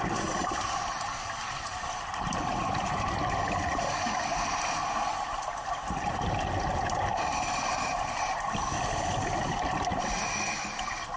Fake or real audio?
real